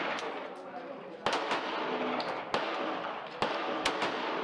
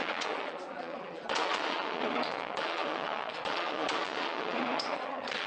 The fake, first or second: second